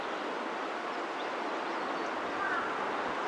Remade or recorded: recorded